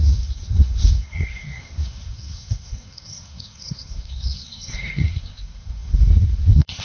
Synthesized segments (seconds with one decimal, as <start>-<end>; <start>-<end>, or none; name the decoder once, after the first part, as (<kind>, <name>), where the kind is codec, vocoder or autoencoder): 0.0-6.8 (codec, SNAC)

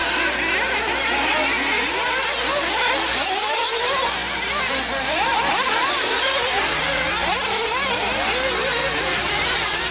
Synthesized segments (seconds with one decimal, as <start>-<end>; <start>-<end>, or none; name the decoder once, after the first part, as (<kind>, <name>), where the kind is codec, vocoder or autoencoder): none

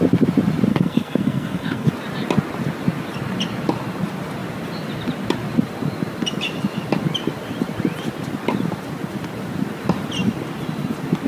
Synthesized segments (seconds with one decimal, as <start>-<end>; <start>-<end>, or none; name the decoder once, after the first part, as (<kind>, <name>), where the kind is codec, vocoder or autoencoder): 0.7-1.9 (codec, SNAC)

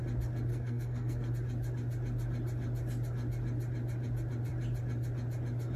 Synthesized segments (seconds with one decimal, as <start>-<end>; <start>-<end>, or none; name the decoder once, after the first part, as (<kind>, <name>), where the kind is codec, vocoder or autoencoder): 0.5-1.3 (codec, SNAC)

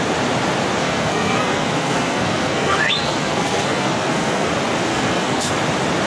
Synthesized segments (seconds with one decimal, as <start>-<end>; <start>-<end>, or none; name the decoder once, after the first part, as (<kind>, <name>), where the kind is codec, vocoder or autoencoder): 0.8-4.5 (codec, SNAC); 4.9-5.5

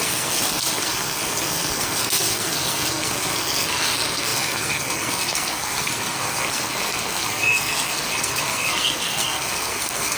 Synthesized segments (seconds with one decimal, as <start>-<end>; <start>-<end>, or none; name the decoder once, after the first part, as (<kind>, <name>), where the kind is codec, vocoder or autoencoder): 0.0-10.2 (codec, SNAC)

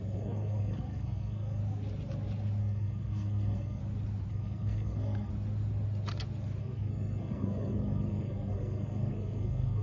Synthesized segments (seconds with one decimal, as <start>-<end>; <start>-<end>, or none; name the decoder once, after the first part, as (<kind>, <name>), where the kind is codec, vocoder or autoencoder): 0.0-1.6 (codec, SNAC); 2.6-3.8; 4.3-5.3; 6.6-9.8

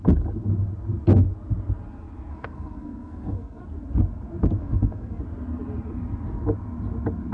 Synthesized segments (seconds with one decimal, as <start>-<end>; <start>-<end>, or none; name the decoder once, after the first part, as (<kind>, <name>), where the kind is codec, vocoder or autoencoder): 2.3-3.6 (codec, SNAC); 4.6-5.2